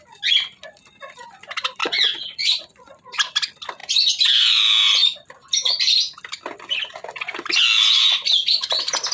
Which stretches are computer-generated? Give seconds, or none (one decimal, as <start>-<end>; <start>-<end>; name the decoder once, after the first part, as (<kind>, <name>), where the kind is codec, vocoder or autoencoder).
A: 1.8-2.9 (vocoder, Vocos)